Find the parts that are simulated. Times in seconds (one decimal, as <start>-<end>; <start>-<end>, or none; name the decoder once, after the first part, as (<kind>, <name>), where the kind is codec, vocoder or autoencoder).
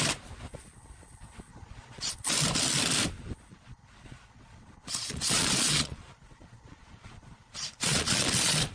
1.5-2.1 (vocoder, Vocos); 3.5-8.7